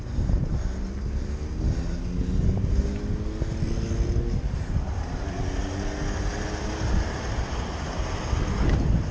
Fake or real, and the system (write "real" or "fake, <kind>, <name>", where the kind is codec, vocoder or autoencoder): real